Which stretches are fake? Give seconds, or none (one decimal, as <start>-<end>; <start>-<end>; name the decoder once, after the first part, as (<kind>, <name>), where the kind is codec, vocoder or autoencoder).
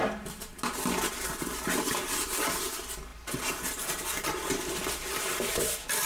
none